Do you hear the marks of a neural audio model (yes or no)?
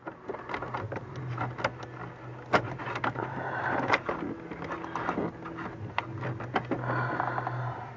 no